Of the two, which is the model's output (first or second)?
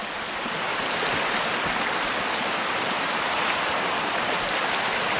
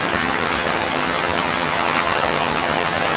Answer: second